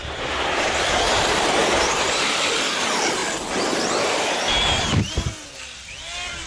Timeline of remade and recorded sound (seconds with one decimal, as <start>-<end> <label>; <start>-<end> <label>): 0.0-2.3 remade; 2.3-6.5 recorded